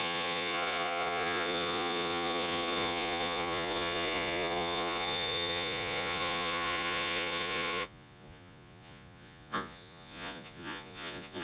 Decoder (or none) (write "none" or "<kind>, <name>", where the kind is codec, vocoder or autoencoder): vocoder, Vocos